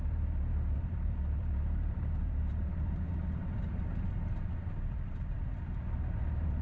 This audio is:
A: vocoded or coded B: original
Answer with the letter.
A